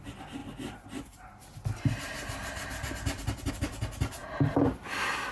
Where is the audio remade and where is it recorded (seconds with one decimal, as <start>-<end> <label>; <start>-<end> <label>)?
0.0-5.3 recorded